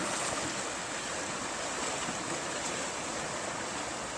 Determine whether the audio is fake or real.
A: real